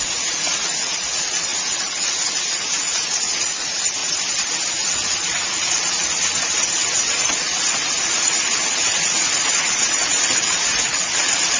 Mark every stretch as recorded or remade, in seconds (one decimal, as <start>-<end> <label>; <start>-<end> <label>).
0.0-4.0 remade; 4.0-4.7 recorded; 4.7-11.6 remade